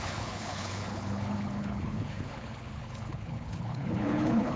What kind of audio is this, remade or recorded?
remade